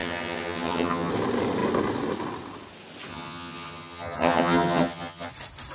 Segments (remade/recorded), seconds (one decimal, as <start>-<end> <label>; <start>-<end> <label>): 0.0-1.1 remade; 1.1-3.1 recorded; 3.1-5.3 remade; 5.3-5.7 recorded